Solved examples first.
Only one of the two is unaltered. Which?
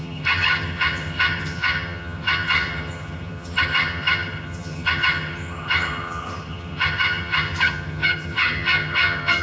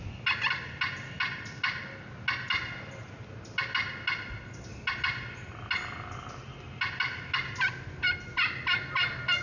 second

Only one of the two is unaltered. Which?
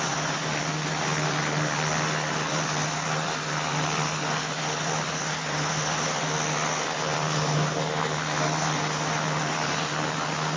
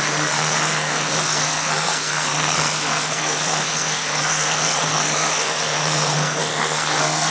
first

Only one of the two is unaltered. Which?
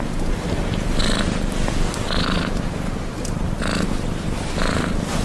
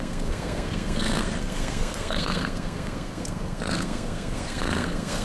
first